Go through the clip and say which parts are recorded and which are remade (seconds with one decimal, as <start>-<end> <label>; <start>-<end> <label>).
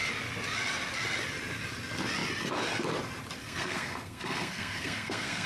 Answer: 0.0-3.4 recorded; 3.4-5.5 remade